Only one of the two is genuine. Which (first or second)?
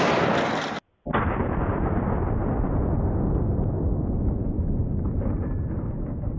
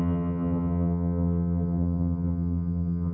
first